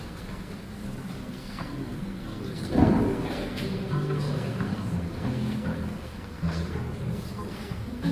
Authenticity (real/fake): fake